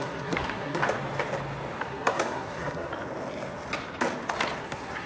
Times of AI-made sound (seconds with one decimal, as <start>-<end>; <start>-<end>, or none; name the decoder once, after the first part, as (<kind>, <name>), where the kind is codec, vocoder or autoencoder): 0.0-0.8 (codec, SNAC); 1.8-2.9; 4.6-5.1